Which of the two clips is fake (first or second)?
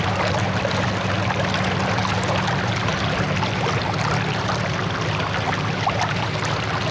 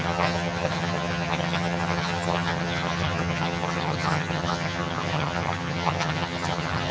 second